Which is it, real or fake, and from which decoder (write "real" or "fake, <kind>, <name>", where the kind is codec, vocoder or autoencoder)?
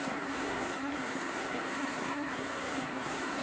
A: fake, codec, SNAC